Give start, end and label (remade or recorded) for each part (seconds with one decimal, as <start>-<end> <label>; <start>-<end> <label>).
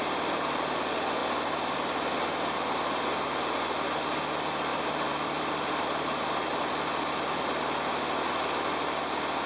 0.0-4.7 recorded; 4.7-6.7 remade; 6.7-9.5 recorded